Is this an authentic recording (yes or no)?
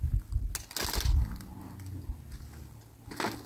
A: yes